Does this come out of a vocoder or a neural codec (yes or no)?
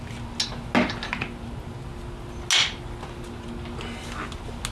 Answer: no